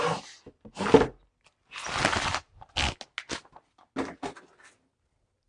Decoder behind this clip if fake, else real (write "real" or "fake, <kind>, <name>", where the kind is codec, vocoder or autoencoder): real